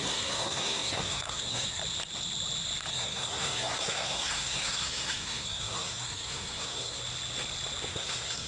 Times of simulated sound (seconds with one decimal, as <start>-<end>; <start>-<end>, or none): 0.0-1.8; 2.9-7.0; 7.9-8.5